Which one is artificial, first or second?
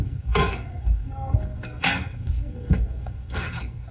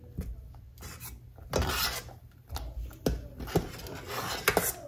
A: first